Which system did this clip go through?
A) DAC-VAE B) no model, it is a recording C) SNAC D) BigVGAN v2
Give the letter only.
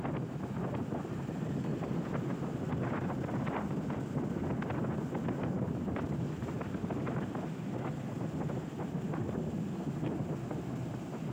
B